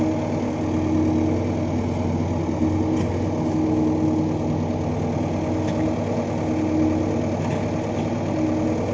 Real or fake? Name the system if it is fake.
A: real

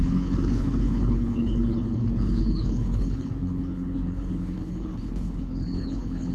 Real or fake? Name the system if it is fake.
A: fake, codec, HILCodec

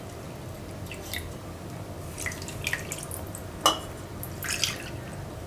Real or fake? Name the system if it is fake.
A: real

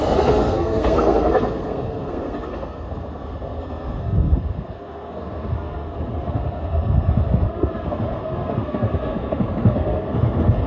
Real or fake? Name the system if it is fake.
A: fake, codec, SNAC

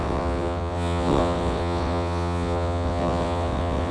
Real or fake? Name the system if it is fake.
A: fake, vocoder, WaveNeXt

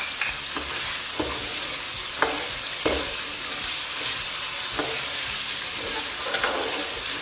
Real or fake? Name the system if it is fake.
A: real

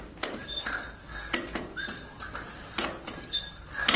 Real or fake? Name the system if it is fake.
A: real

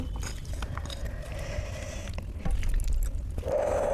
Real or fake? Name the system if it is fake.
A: real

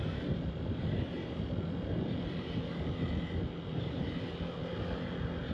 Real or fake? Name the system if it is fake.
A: real